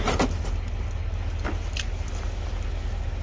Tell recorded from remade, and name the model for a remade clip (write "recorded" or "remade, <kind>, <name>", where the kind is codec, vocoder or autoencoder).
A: recorded